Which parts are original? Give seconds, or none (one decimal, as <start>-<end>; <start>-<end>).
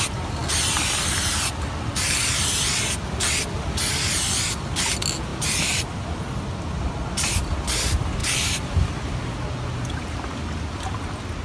0.0-8.2; 8.9-11.4